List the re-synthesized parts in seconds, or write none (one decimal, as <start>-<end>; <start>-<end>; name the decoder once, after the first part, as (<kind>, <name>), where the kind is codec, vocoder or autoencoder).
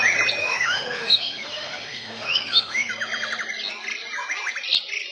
0.4-2.9 (autoencoder, DAC-VAE)